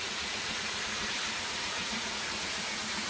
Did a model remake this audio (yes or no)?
yes